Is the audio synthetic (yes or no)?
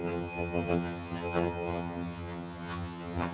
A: yes